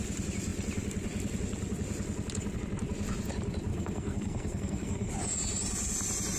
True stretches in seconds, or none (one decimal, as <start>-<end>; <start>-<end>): 0.0-3.7; 5.1-6.4